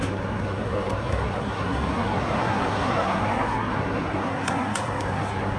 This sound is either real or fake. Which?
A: fake